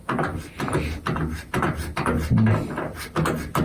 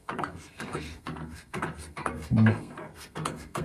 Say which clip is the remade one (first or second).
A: second